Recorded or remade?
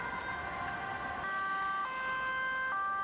recorded